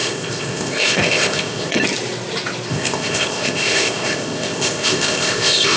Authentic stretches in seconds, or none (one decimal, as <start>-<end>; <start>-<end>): 1.8-2.7